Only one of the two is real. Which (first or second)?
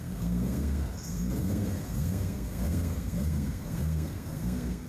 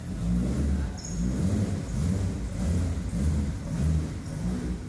second